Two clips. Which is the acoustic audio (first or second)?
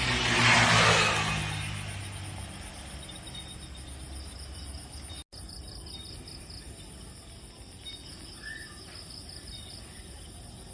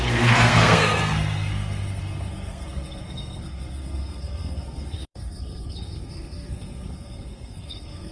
first